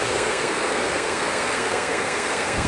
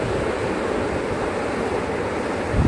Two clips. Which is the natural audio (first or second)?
second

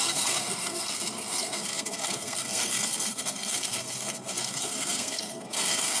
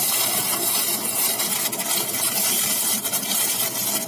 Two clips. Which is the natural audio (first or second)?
second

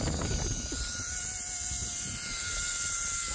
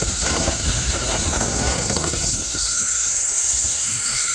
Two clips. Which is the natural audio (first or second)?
first